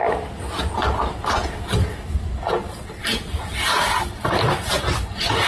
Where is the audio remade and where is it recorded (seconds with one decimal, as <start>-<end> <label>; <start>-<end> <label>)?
0.0-5.5 recorded